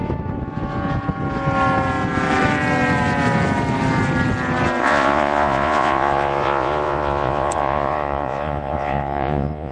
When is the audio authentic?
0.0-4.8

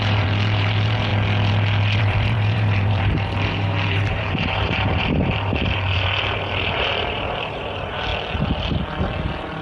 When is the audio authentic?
1.1-2.0; 8.1-9.2

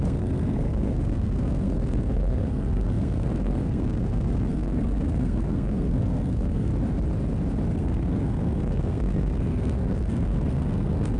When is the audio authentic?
6.7-7.7

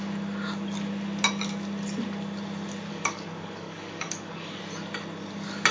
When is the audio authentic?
0.0-2.9; 4.6-5.7

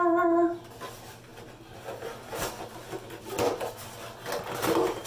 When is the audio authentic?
0.0-5.1

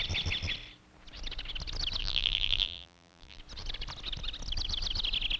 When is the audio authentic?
0.0-2.0; 3.4-5.4

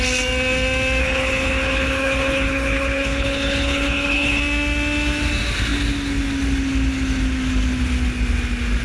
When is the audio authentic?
0.0-1.0; 4.4-8.8